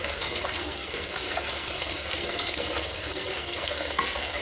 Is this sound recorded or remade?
remade